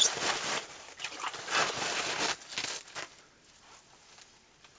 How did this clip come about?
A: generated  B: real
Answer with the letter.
B